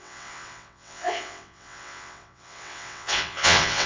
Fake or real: fake